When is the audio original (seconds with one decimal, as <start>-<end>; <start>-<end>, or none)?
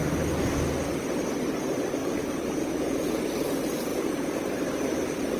0.0-2.0; 3.2-3.9; 4.4-5.4